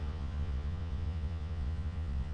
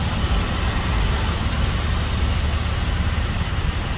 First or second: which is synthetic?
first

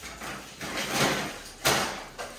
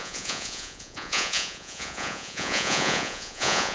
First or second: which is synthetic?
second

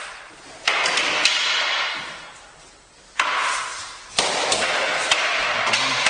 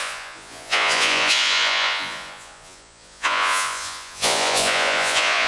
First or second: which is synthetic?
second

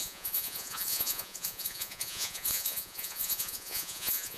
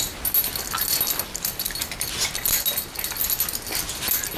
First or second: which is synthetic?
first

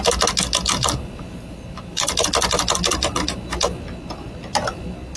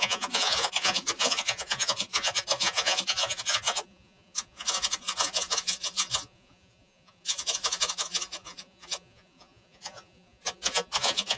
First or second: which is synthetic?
second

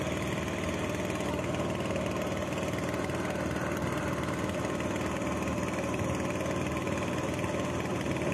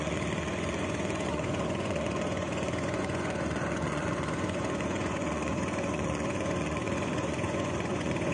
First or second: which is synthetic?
second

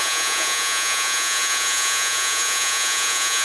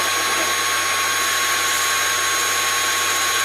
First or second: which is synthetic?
first